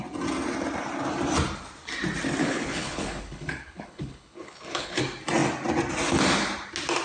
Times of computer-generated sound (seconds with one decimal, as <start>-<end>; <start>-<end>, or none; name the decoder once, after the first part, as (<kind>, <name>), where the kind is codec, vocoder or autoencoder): 2.4-5.0 (codec, HILCodec)